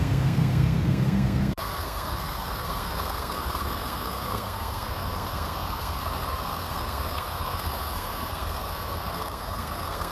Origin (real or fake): fake